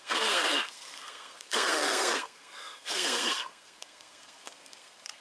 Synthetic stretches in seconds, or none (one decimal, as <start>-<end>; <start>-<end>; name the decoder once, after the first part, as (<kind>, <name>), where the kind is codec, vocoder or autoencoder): 0.0-5.2 (codec, SNAC)